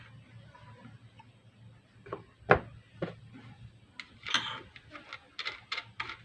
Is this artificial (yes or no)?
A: no